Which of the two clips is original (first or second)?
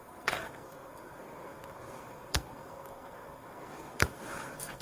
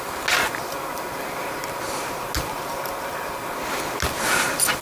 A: second